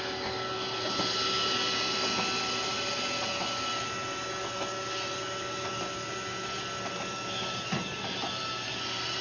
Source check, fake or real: real